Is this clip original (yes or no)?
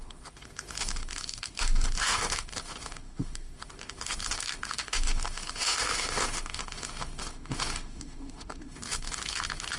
no